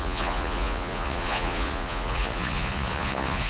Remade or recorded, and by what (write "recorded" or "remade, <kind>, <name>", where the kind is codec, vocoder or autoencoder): remade, vocoder, Vocos